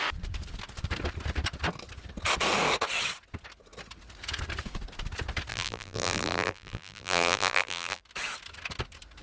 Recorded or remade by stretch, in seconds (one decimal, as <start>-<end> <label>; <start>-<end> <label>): 0.0-5.5 recorded; 5.5-8.0 remade; 8.0-9.2 recorded